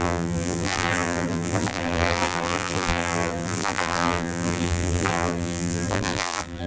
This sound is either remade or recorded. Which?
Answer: remade